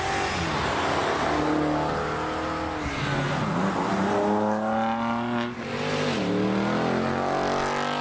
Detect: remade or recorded recorded